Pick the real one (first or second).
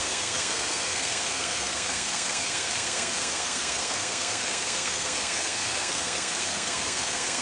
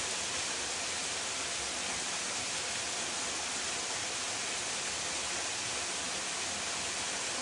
second